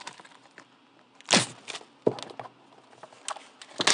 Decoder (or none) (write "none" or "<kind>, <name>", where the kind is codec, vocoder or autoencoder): none